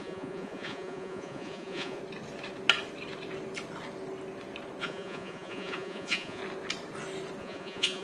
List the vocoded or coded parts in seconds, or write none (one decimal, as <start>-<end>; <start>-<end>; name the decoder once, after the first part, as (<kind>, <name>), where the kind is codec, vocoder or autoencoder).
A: 0.0-2.0 (vocoder, Vocos); 4.8-6.4; 7.4-8.0